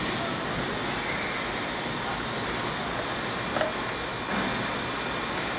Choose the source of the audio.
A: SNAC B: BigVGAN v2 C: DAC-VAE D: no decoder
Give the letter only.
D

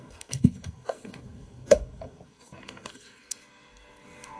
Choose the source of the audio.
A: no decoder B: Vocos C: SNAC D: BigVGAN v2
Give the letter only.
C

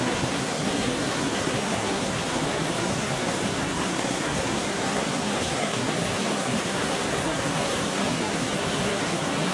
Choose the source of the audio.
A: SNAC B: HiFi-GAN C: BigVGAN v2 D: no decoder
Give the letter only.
A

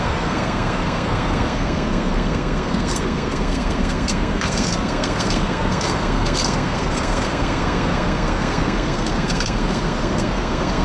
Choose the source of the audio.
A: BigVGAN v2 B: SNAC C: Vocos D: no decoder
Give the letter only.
B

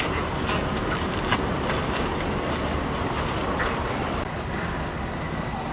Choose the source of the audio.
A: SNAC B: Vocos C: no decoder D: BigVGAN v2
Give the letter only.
C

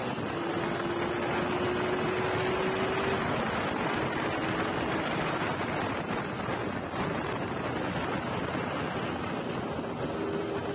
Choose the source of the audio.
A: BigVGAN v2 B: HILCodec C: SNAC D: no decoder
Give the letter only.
D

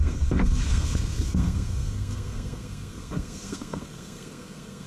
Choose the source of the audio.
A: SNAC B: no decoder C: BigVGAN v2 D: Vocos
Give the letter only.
A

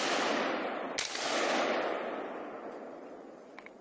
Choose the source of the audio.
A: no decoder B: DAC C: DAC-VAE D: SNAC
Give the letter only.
A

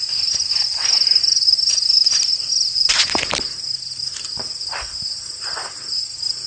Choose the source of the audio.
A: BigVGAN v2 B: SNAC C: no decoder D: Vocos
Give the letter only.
C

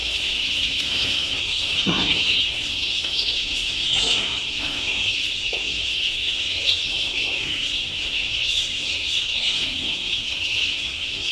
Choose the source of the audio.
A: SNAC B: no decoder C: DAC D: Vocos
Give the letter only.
A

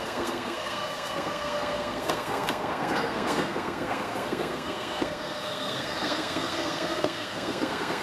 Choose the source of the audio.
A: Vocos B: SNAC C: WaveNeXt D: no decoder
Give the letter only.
B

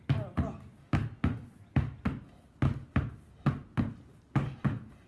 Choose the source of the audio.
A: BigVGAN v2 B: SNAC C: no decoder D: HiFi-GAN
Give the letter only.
C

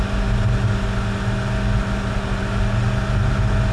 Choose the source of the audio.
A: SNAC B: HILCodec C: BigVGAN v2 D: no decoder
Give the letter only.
D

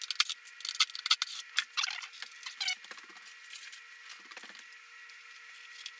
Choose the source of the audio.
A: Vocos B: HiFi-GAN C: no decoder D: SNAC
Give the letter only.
C